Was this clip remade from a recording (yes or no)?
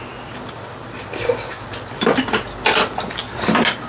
no